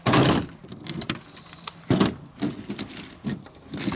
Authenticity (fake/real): real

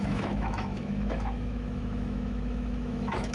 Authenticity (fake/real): fake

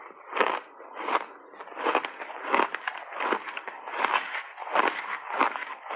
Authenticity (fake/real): real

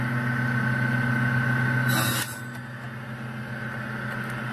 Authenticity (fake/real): real